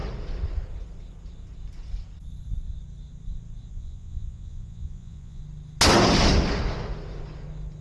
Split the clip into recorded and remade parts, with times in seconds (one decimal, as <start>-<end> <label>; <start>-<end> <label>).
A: 0.0-3.7 recorded; 3.7-5.4 remade; 5.4-7.8 recorded